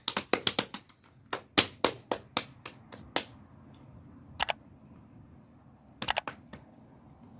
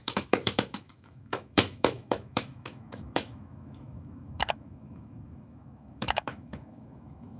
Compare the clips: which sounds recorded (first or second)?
first